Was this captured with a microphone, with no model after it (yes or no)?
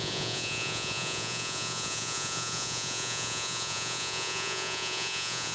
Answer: no